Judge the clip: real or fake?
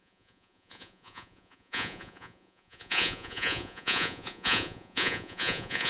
fake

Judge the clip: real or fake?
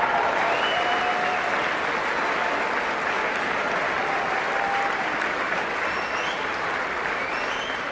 real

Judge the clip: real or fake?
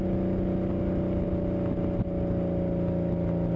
real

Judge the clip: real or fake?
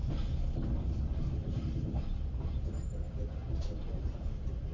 real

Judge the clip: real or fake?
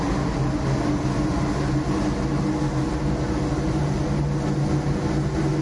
real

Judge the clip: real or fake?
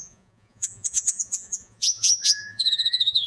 fake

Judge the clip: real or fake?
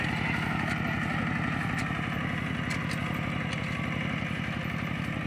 real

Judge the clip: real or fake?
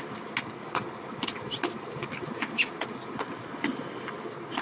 real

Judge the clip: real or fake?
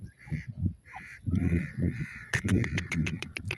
fake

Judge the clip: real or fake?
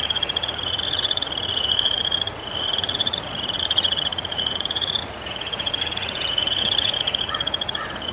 fake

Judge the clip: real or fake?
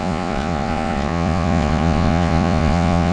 fake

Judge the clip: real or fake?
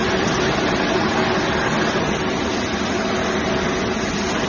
real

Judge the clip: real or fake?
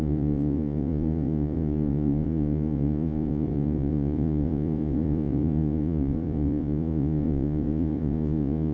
fake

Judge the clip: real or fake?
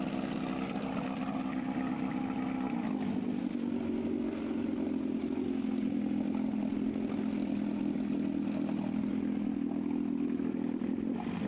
real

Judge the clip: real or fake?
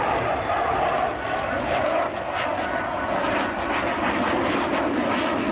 real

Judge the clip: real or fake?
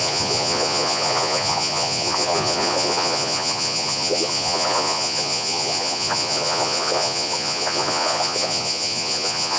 fake